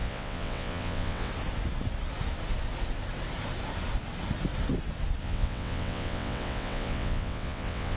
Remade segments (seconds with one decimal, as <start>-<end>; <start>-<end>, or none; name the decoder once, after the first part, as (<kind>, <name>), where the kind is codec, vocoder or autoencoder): 0.0-1.3 (vocoder, WaveNeXt); 5.2-8.0